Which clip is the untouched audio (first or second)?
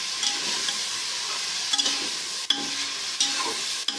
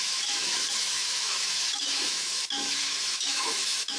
first